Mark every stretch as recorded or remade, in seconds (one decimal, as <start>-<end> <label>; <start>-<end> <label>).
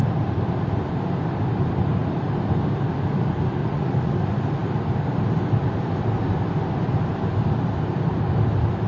0.0-3.6 recorded; 3.6-4.1 remade; 4.1-8.9 recorded